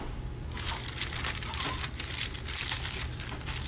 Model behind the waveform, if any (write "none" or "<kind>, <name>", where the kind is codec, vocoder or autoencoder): none